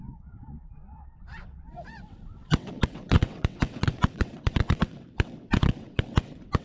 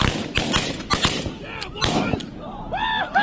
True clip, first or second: second